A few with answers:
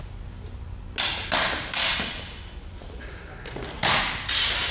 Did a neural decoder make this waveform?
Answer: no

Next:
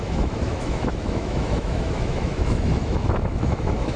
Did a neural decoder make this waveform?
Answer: yes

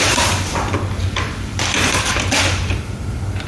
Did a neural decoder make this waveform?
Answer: yes